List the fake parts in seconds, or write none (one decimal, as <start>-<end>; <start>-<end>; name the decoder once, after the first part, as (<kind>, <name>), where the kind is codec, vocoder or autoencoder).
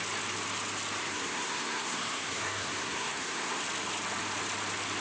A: 1.0-3.6 (codec, SNAC)